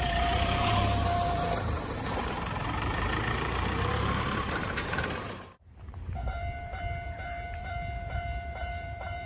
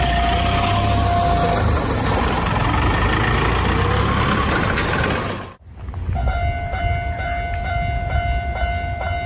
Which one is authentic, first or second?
second